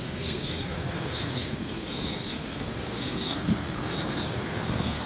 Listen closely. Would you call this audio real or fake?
fake